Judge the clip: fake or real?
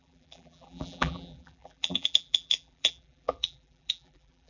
fake